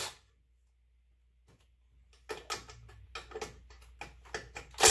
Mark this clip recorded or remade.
recorded